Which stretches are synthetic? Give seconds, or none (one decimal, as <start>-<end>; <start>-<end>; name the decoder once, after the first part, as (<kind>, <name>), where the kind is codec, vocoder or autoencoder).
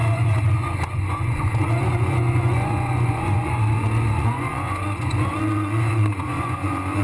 0.0-7.0 (vocoder, Vocos)